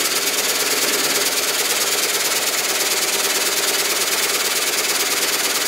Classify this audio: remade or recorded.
recorded